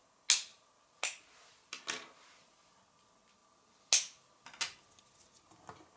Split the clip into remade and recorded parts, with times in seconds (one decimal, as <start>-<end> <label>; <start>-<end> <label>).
0.0-6.0 recorded